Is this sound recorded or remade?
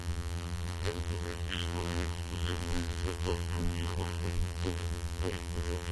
remade